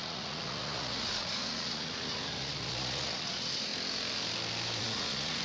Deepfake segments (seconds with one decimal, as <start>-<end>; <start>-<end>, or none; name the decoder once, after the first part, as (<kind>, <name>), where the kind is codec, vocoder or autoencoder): 0.0-3.7 (vocoder, Vocos); 4.8-5.4